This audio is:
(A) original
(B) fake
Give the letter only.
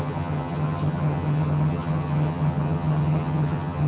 B